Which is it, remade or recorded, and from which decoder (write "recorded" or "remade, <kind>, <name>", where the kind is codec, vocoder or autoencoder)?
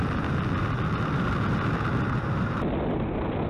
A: recorded